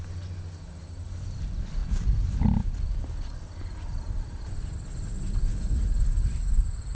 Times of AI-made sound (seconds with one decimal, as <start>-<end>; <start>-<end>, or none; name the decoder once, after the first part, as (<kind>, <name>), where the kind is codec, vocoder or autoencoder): none

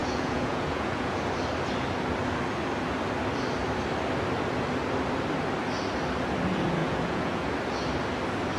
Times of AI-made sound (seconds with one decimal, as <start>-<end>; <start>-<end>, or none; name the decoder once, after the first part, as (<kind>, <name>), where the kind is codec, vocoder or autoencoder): 0.0-1.2 (vocoder, Vocos); 6.8-7.5